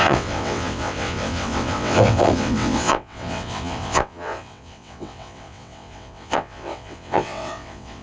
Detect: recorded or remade remade